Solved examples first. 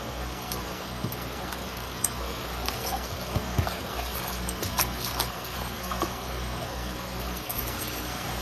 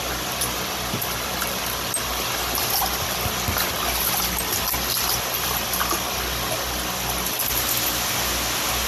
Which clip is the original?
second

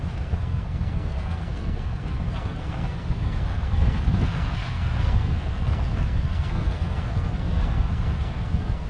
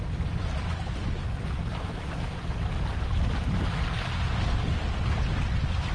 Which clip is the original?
second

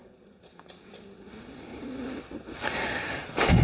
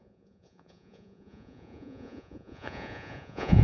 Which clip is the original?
first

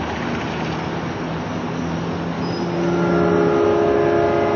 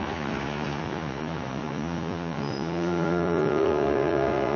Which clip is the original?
first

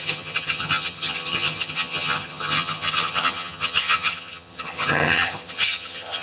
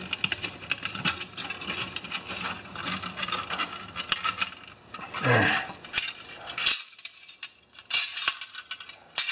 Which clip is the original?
second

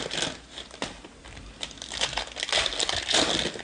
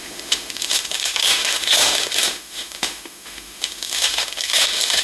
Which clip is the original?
first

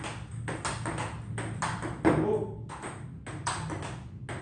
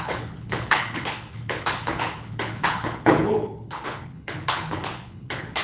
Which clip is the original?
first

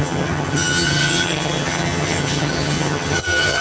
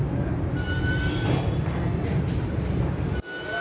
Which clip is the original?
second